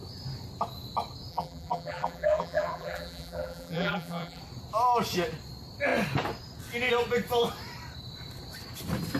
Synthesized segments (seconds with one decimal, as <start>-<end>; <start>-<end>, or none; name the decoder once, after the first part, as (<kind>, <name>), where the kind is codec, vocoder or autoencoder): 1.3-4.4 (vocoder, BigVGAN v2)